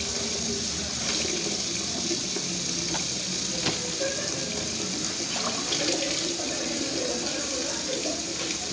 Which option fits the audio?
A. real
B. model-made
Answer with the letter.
A